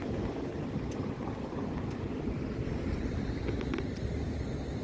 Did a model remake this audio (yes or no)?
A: no